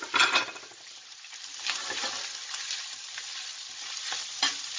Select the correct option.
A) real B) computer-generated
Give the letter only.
A